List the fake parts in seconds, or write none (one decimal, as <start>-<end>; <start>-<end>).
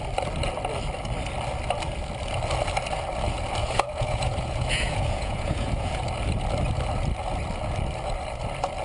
3.6-6.0